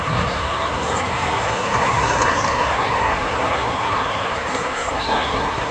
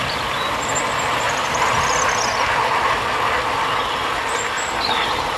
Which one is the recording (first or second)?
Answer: second